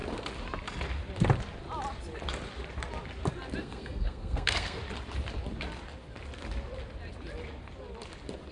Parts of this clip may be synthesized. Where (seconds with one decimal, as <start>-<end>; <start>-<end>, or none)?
3.6-4.8